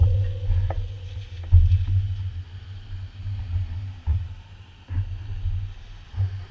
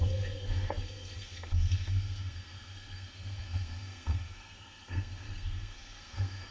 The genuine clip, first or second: first